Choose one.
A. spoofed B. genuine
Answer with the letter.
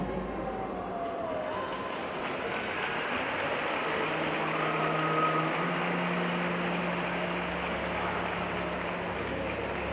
B